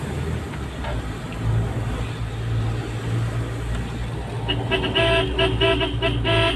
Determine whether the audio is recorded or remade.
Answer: recorded